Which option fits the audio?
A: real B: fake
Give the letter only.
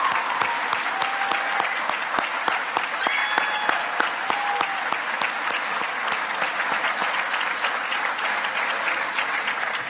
A